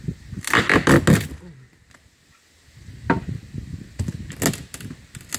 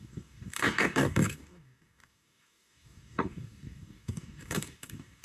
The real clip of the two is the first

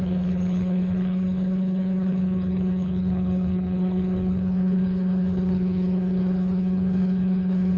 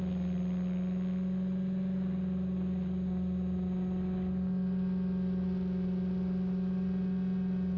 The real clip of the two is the second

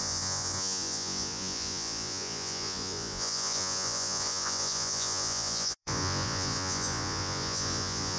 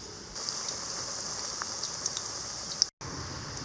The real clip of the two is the second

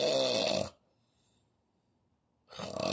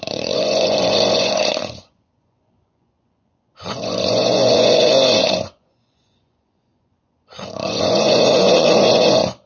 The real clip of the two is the first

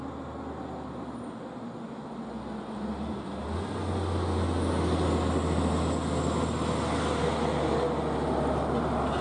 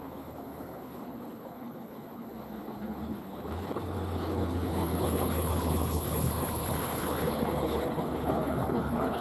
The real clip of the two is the first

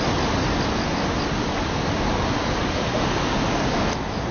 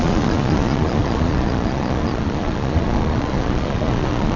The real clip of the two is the first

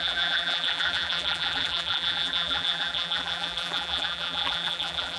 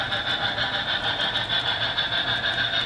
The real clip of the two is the second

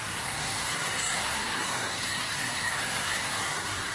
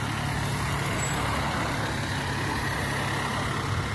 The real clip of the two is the second